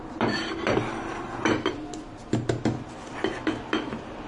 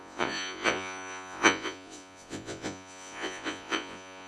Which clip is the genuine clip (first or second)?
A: first